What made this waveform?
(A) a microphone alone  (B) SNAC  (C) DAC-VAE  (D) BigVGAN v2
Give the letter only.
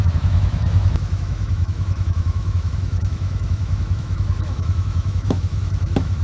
C